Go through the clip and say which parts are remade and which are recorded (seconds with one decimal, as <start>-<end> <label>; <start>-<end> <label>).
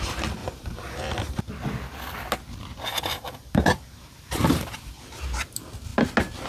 0.0-0.4 recorded; 0.4-1.4 remade; 1.4-2.9 recorded; 2.9-5.2 remade; 5.2-6.5 recorded